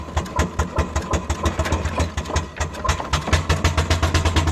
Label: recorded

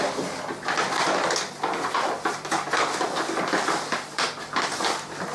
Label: recorded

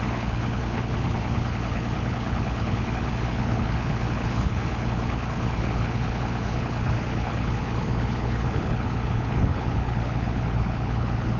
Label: remade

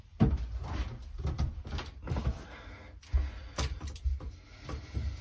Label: remade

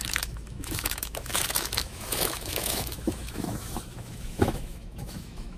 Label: remade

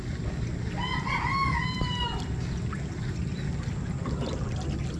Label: recorded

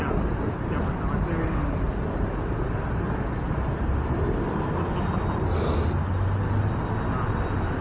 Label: recorded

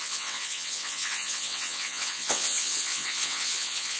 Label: remade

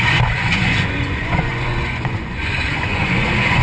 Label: remade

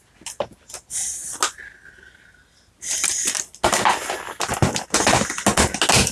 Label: recorded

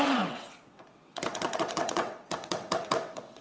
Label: remade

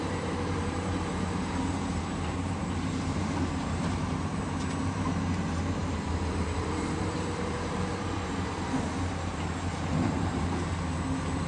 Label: remade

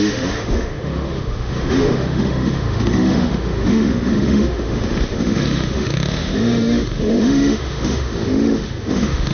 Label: remade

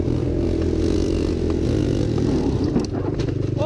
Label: recorded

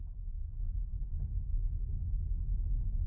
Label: recorded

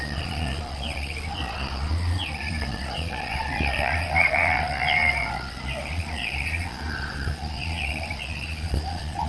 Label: remade